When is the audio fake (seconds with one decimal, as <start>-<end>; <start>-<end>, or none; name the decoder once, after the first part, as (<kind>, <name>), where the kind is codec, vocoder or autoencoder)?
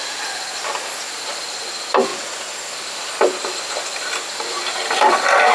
none